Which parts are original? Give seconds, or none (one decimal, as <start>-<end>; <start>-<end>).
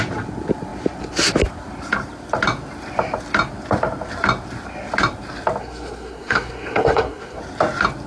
0.0-5.6; 7.4-8.1